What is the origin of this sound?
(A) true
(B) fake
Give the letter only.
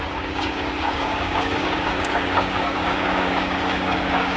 B